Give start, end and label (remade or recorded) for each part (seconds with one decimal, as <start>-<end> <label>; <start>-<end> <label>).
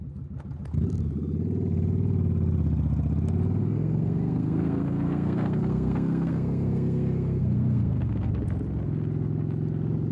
0.0-3.6 recorded; 3.6-8.3 remade; 8.3-10.1 recorded